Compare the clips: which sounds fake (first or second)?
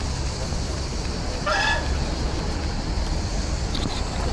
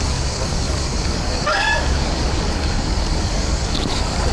second